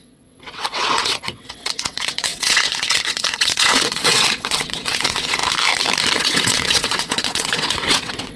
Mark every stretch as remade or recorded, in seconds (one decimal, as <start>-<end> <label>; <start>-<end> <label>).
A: 0.0-5.4 remade; 5.4-6.2 recorded; 6.2-8.4 remade